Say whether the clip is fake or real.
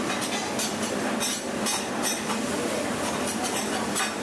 real